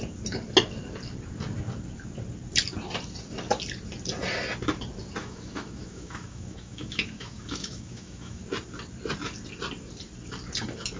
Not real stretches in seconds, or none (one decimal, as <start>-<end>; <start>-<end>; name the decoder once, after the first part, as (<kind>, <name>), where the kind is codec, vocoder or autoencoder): 5.2-8.4 (autoencoder, DAC-VAE)